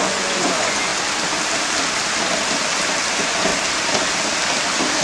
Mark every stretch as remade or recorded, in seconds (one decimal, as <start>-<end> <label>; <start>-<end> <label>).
0.0-0.9 remade; 0.9-3.1 recorded; 3.1-3.5 remade; 3.5-5.0 recorded